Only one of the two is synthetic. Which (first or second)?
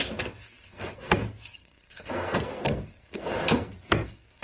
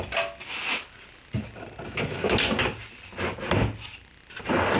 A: first